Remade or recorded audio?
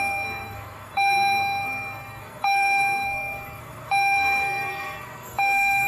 remade